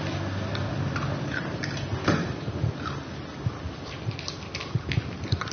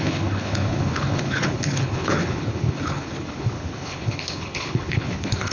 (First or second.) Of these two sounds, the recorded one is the first